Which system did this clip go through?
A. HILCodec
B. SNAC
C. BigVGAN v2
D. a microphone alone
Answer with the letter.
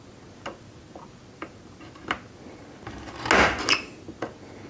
D